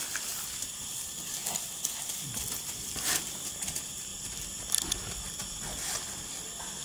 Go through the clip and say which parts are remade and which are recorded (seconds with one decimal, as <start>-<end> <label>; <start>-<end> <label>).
0.0-6.8 recorded